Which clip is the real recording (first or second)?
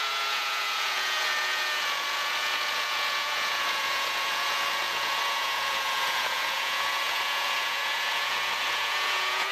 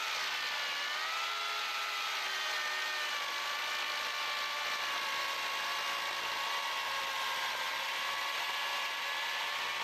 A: second